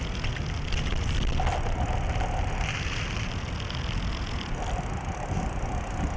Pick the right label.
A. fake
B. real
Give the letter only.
B